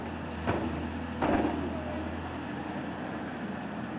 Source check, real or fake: real